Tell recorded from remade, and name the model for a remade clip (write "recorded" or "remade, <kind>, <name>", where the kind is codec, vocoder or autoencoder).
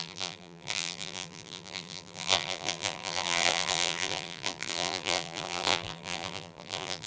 remade, vocoder, BigVGAN v2